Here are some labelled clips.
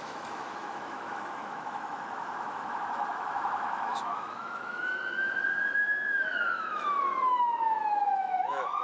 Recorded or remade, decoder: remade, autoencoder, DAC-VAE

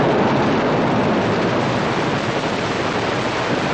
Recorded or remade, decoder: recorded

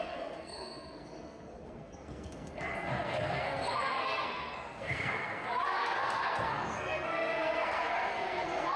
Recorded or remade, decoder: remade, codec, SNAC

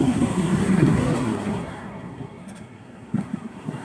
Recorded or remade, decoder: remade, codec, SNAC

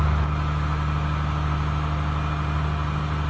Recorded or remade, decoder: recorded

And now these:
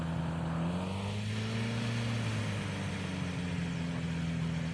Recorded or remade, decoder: recorded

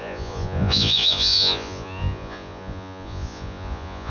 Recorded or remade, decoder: remade, vocoder, Vocos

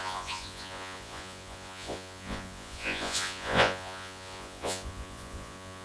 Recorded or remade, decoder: remade, vocoder, Vocos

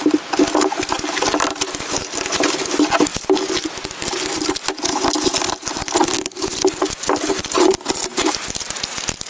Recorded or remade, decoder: recorded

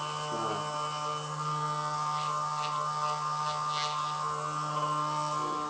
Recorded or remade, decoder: recorded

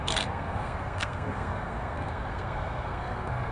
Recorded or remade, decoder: remade, codec, SNAC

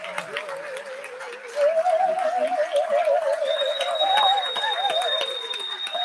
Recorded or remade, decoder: recorded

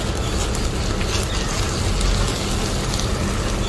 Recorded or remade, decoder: recorded